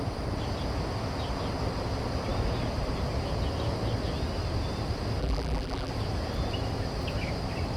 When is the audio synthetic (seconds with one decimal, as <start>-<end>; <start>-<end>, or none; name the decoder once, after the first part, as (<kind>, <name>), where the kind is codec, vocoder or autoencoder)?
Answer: 5.2-5.9 (vocoder, BigVGAN v2)